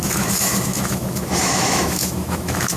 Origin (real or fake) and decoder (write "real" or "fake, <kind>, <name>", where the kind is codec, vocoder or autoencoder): fake, autoencoder, DAC-VAE